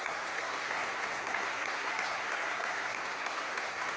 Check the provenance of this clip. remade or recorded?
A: remade